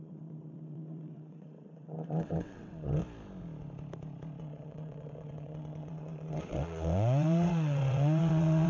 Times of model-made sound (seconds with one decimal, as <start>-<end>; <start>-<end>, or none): 0.0-3.0; 4.4-8.7